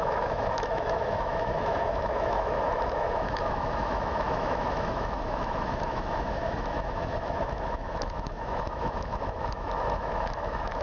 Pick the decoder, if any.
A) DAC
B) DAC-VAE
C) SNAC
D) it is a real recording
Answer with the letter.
B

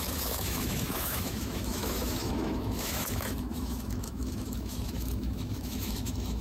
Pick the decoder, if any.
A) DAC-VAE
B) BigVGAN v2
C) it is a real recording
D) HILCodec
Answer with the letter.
A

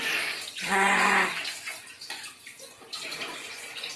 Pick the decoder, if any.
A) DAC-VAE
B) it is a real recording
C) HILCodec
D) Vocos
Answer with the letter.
D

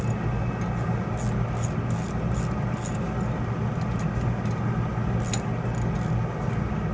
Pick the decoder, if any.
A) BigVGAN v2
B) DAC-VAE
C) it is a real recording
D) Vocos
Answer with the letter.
C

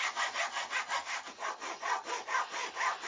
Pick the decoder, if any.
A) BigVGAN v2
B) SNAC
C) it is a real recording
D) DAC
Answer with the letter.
C